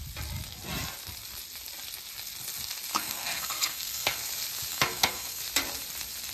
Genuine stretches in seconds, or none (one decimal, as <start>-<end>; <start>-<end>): 0.0-2.9; 4.2-4.7; 5.4-6.3